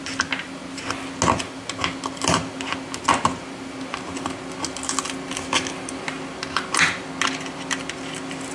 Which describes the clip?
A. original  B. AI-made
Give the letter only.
A